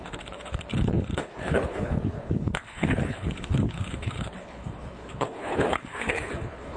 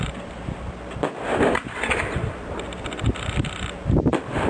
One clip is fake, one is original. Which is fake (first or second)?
first